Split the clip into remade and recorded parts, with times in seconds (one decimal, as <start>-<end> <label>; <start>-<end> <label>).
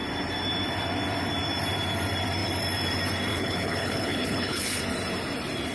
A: 0.0-3.3 recorded; 3.3-4.8 remade; 4.8-5.7 recorded